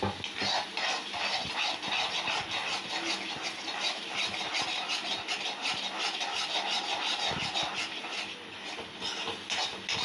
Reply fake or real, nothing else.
real